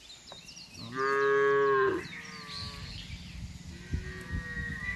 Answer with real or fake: real